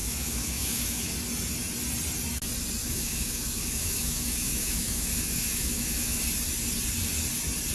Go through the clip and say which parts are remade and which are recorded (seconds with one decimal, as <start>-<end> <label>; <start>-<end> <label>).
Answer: 0.0-1.1 remade; 1.1-2.8 recorded; 2.8-6.2 remade; 6.2-7.7 recorded